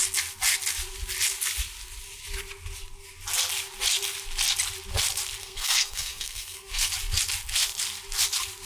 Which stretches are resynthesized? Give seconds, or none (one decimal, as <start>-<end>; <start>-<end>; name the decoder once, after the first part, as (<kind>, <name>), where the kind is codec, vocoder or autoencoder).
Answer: 5.4-6.9 (codec, SNAC)